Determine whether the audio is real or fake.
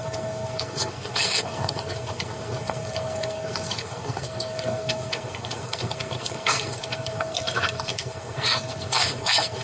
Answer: fake